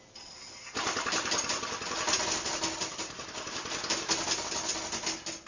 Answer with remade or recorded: recorded